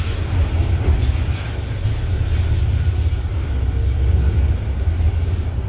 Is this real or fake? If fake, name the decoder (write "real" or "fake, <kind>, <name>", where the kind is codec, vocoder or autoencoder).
fake, vocoder, BigVGAN v2